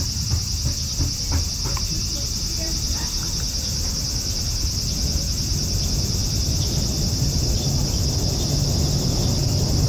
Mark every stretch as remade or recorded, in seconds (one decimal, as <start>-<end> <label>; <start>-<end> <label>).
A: 0.0-9.9 recorded